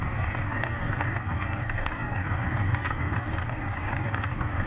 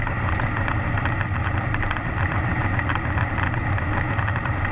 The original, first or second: second